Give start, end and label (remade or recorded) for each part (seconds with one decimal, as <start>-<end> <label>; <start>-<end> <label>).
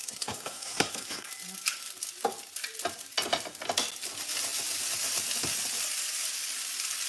0.0-1.3 remade; 1.3-7.1 recorded